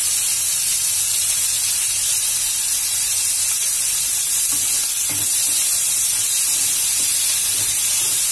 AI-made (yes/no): no